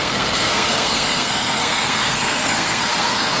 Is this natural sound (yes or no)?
no